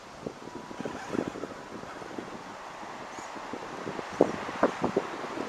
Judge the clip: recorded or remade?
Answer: recorded